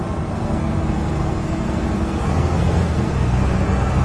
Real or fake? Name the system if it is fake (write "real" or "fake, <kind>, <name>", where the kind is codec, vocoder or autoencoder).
fake, codec, SNAC